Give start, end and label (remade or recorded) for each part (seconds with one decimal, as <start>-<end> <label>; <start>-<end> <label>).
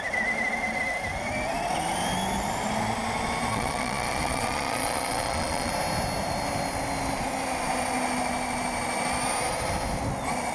0.0-3.5 recorded; 3.5-5.7 remade; 5.7-10.5 recorded